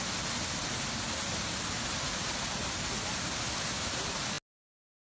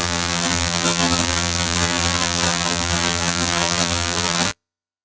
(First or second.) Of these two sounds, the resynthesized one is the second